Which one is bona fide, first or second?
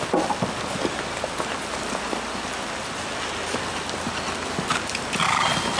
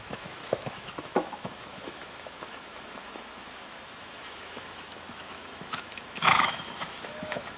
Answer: first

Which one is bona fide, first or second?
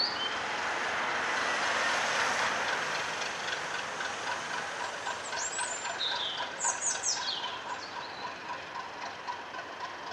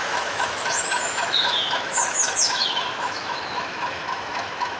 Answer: first